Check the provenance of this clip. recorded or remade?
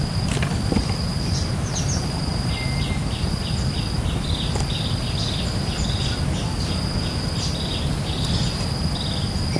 recorded